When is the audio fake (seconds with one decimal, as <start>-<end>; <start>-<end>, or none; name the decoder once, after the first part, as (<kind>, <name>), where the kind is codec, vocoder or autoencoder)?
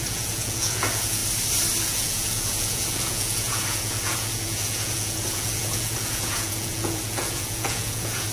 0.0-1.2 (vocoder, Vocos); 1.8-8.3